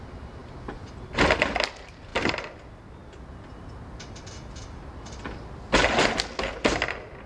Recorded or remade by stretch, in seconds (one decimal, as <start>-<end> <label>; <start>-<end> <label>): 0.0-7.3 recorded